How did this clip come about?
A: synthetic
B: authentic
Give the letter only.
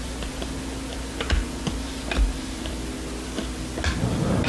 B